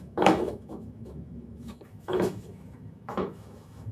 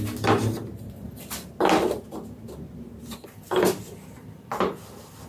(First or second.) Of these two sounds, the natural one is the second